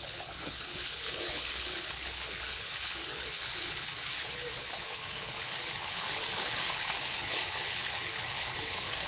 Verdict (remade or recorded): remade